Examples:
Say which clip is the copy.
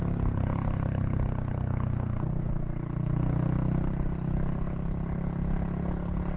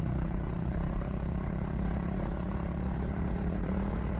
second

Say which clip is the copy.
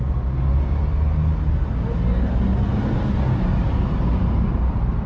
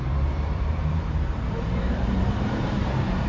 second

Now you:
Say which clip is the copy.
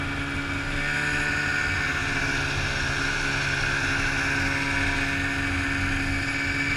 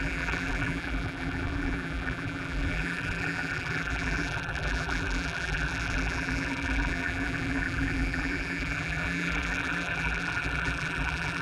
second